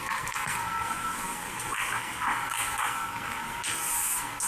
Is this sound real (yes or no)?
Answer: no